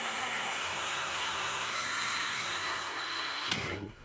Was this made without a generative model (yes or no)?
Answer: no